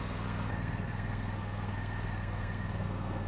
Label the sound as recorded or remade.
remade